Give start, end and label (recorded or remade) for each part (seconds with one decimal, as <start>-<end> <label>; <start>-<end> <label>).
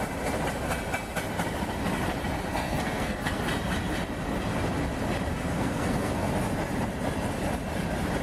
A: 0.0-2.5 recorded; 2.5-3.4 remade; 3.4-5.3 recorded; 5.3-6.3 remade; 6.3-8.2 recorded